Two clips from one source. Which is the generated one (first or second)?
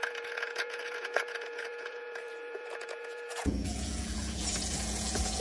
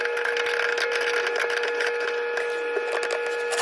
first